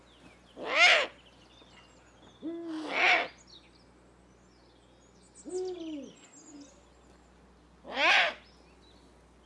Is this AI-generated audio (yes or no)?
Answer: no